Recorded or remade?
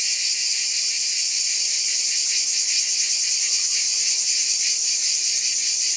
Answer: recorded